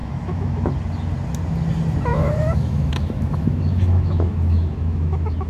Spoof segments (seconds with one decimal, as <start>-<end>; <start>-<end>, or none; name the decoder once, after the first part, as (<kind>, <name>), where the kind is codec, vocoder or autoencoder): 0.0-0.7 (autoencoder, DAC-VAE); 2.1-5.5